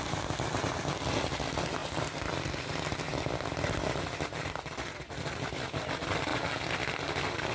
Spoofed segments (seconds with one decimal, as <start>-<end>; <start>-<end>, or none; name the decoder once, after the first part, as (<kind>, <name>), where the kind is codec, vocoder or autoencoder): none